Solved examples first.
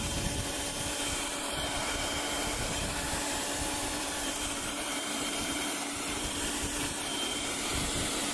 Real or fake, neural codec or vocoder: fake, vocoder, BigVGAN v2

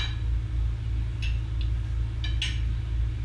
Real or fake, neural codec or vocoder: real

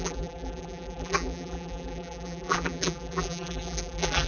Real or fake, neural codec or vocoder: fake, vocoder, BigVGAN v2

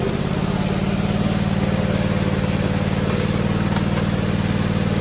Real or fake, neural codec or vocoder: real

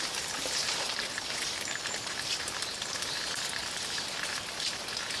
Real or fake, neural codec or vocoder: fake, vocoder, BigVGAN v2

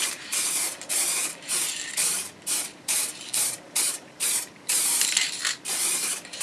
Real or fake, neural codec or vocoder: fake, vocoder, BigVGAN v2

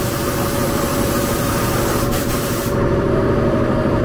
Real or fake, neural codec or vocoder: fake, vocoder, BigVGAN v2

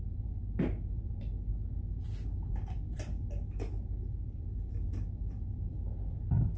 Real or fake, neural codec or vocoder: fake, vocoder, BigVGAN v2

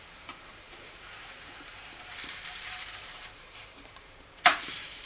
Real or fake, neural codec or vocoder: fake, vocoder, BigVGAN v2